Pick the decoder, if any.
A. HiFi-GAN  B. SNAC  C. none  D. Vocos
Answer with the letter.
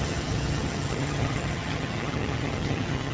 A